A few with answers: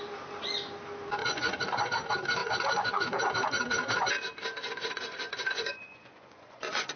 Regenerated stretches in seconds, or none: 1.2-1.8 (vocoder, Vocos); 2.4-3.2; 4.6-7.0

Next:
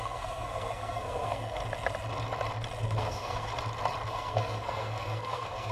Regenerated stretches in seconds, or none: 0.0-1.6 (codec, SNAC); 2.8-3.5; 4.1-5.7

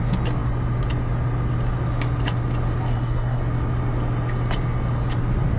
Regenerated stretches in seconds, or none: 2.9-3.4 (codec, SNAC)